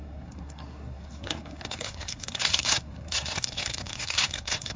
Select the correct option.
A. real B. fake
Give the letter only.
B